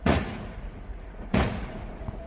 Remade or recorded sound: remade